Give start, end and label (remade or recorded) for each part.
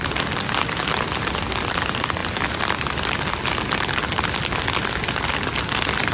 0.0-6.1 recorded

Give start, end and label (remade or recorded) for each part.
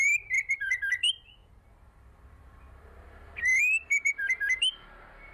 0.0-5.3 remade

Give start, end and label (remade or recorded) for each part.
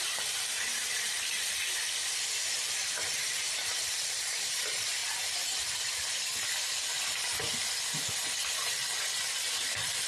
0.0-5.0 remade; 5.0-9.5 recorded; 9.5-10.1 remade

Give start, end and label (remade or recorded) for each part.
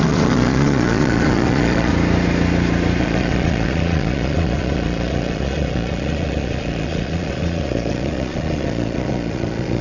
0.0-1.9 remade; 1.9-3.0 recorded; 3.0-9.8 remade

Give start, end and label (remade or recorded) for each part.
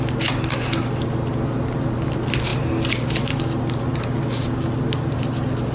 0.0-5.7 recorded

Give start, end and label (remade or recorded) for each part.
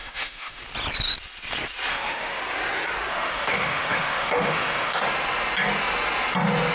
0.0-0.6 remade; 0.6-1.9 recorded; 1.9-2.4 remade; 2.4-3.1 recorded; 3.1-5.0 remade; 5.0-6.7 recorded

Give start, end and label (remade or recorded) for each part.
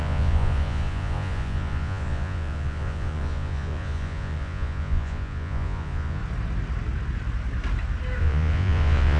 0.0-6.2 remade; 6.2-8.2 recorded; 8.2-9.2 remade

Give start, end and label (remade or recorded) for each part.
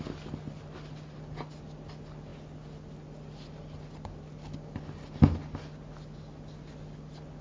0.0-7.4 recorded